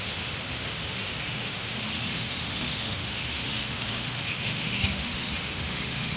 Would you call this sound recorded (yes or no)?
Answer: no